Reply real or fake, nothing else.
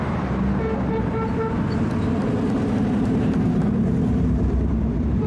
fake